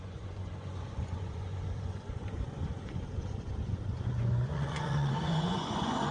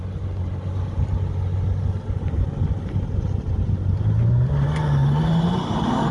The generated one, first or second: first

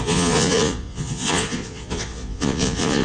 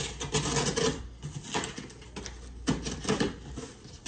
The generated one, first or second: first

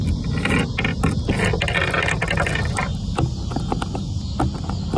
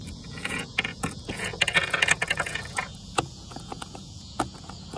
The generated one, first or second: second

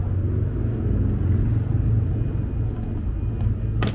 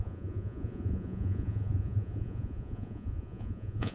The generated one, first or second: second